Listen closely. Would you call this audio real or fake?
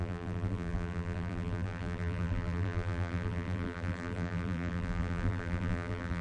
fake